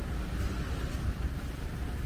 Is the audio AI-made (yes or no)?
no